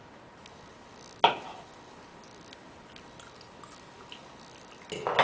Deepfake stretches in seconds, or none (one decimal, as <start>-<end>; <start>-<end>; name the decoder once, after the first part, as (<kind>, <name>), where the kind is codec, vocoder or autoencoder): none